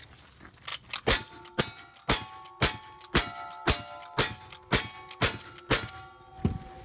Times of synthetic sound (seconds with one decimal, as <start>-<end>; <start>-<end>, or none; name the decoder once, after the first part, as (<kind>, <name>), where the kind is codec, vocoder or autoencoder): none